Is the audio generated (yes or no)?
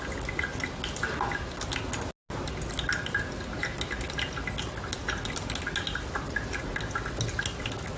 no